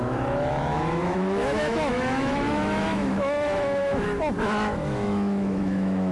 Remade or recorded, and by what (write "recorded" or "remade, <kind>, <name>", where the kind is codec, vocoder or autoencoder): remade, autoencoder, DAC-VAE